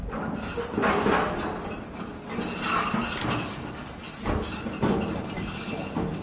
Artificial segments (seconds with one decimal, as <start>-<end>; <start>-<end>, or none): none